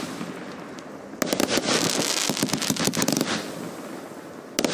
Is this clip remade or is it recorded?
recorded